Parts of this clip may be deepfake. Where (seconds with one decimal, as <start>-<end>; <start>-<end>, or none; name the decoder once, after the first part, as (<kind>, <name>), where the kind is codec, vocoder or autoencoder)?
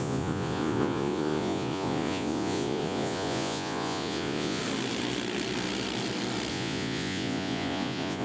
0.0-4.6 (vocoder, Vocos); 6.5-8.2